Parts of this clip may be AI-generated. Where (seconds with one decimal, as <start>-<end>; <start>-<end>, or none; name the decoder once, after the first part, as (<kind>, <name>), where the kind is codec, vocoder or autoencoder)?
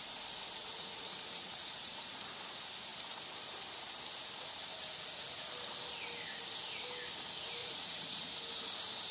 0.6-1.9 (vocoder, Vocos); 7.6-8.3